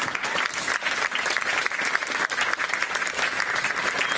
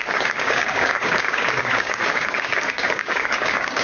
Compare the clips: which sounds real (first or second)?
first